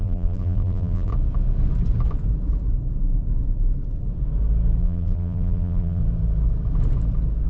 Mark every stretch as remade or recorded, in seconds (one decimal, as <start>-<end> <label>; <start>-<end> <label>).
0.0-1.1 remade; 1.1-4.8 recorded; 4.8-6.0 remade; 6.0-7.5 recorded